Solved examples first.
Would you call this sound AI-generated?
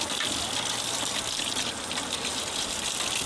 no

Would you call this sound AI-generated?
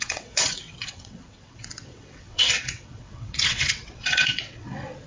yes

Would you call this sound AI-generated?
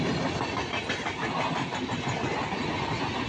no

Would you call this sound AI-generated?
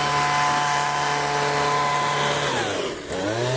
no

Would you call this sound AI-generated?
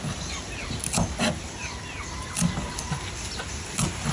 no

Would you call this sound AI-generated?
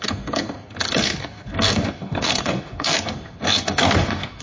yes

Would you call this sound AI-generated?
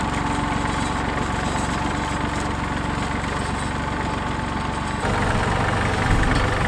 no